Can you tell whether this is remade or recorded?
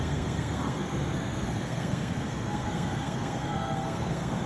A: remade